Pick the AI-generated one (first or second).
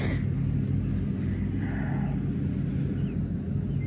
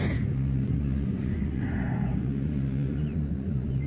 second